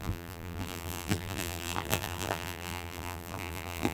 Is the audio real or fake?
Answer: fake